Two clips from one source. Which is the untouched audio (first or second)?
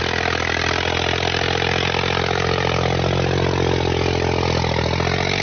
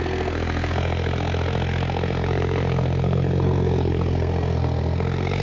first